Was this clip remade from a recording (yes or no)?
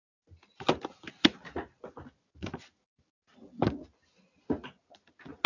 no